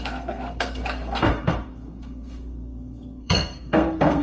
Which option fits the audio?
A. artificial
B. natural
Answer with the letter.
A